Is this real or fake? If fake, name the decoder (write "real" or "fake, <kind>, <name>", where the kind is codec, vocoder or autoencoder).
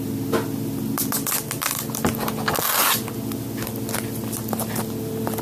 real